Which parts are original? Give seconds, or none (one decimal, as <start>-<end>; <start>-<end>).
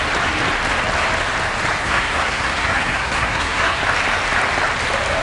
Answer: 0.0-1.8; 3.8-5.2